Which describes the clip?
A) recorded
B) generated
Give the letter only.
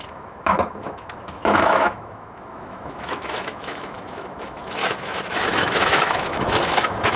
B